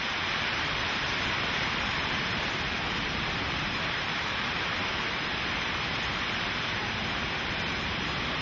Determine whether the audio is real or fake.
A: fake